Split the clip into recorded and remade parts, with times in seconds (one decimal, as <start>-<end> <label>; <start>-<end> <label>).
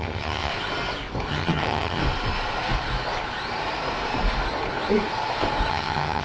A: 0.0-0.5 remade; 0.5-1.3 recorded; 1.3-2.0 remade; 2.0-5.7 recorded; 5.7-6.2 remade